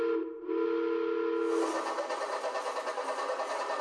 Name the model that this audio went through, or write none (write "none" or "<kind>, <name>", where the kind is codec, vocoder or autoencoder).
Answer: none